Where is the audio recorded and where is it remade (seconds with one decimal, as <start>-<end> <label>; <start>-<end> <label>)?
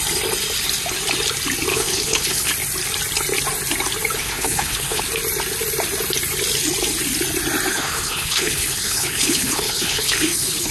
0.0-1.7 recorded; 1.7-2.5 remade; 2.5-4.2 recorded; 4.2-5.0 remade; 5.0-7.7 recorded; 7.7-10.7 remade